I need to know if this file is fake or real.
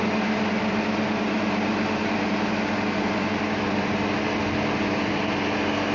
real